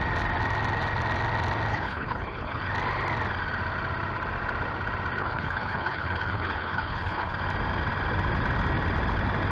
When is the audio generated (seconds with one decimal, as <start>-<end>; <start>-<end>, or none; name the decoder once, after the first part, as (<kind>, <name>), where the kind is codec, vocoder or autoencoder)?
1.7-2.6 (codec, HILCodec); 5.2-7.4